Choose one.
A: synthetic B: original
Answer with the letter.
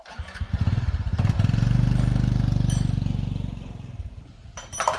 B